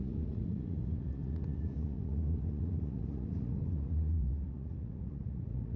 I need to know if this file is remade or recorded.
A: remade